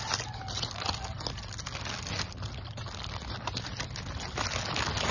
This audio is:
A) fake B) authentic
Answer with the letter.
B